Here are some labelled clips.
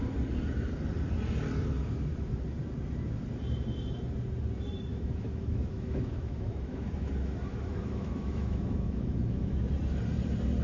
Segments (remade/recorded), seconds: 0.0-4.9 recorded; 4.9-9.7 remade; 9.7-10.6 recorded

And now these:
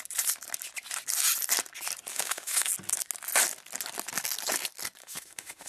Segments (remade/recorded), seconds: 0.0-2.1 recorded; 2.1-2.7 remade; 2.7-5.0 recorded; 5.0-5.7 remade

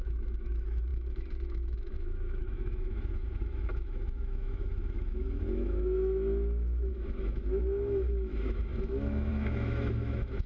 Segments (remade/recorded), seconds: 0.0-10.5 remade

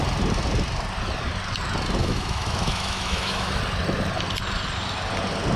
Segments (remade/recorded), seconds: 0.0-2.0 recorded; 2.0-3.6 remade; 3.6-5.6 recorded